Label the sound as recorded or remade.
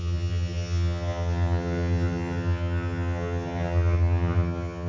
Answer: remade